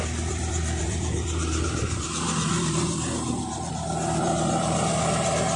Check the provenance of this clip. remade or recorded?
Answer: remade